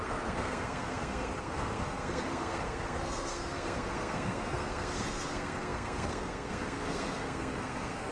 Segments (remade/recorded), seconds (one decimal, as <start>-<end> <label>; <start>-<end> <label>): 0.0-8.1 remade